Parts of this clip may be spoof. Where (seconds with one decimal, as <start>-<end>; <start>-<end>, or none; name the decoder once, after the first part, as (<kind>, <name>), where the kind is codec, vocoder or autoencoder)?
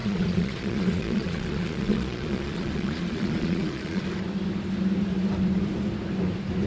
0.0-4.0 (vocoder, Vocos)